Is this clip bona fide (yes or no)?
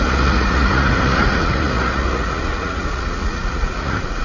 no